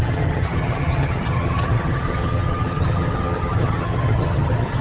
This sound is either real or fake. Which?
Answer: fake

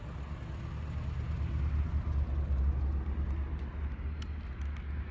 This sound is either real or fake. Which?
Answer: real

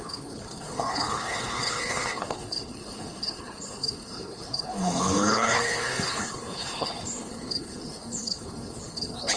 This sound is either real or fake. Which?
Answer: fake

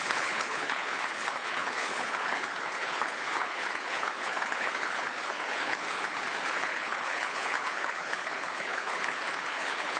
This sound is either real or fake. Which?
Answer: fake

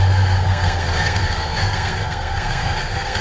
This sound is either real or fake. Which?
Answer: fake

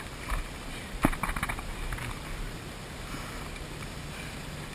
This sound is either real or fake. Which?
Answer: real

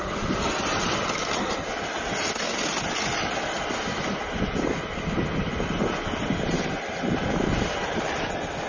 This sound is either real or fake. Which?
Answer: real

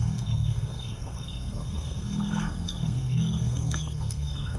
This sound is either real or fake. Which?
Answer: fake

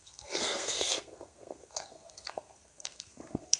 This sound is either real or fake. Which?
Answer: fake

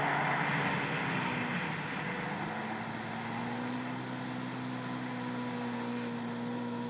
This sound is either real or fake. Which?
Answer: real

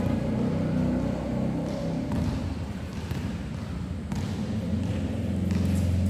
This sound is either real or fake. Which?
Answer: real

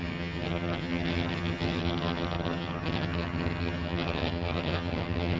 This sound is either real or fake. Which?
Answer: fake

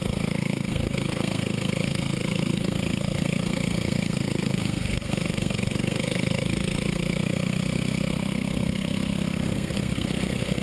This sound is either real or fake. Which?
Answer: fake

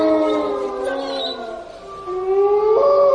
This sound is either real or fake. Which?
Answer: real